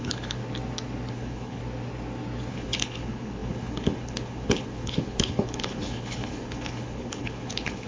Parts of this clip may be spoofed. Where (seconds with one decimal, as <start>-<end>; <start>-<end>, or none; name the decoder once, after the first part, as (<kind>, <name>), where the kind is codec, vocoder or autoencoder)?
0.0-0.4 (codec, HILCodec); 1.1-1.6; 2.5-7.9